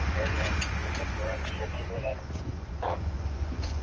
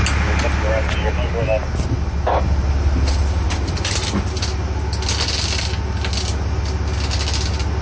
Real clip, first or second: second